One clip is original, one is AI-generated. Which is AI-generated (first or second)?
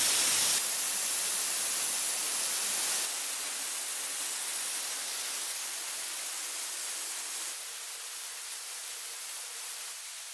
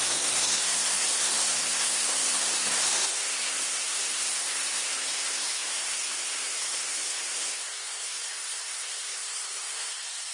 second